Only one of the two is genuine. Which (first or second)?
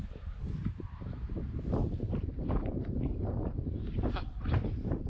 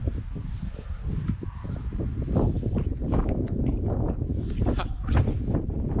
second